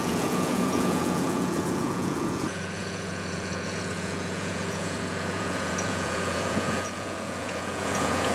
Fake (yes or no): yes